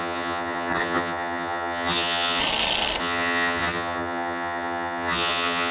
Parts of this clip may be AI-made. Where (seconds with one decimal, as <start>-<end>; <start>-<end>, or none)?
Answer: 0.0-2.4; 3.0-5.7